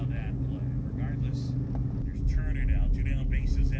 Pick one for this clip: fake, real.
real